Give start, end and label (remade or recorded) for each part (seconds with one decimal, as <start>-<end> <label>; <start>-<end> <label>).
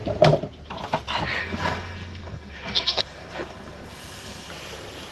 0.0-1.4 recorded; 1.4-4.5 remade; 4.5-5.1 recorded